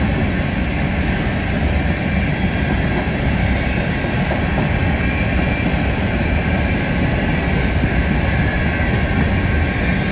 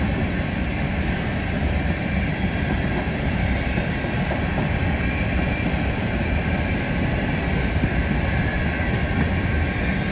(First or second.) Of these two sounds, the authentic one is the first